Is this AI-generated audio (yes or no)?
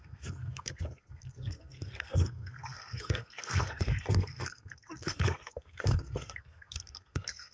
yes